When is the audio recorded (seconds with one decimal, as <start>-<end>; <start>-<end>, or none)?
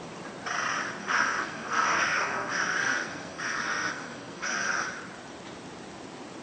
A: 0.0-1.0; 4.8-6.4